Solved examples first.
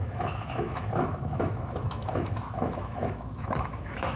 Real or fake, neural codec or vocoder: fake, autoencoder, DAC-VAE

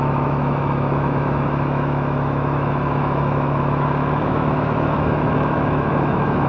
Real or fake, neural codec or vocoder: fake, autoencoder, DAC-VAE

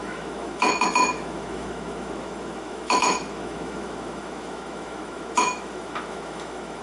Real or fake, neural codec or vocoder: fake, autoencoder, DAC-VAE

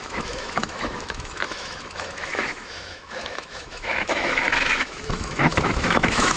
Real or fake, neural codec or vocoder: fake, autoencoder, DAC-VAE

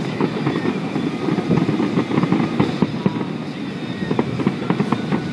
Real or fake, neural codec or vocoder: real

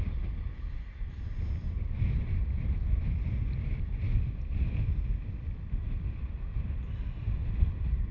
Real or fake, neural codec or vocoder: real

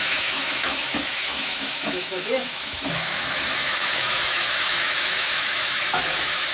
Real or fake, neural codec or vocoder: fake, autoencoder, DAC-VAE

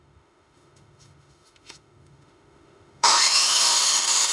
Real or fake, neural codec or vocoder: fake, autoencoder, DAC-VAE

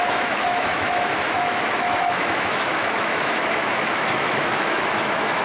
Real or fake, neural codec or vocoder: fake, autoencoder, DAC-VAE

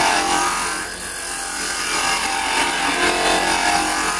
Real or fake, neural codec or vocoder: real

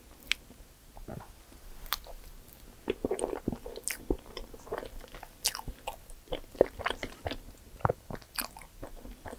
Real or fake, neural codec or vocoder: real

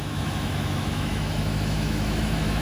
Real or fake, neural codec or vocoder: fake, autoencoder, DAC-VAE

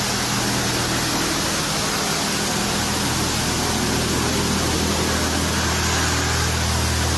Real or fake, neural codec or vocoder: real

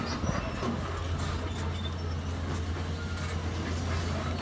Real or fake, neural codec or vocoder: real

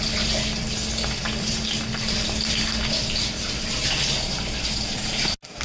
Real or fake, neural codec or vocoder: real